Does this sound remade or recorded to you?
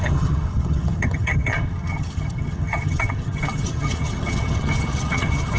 remade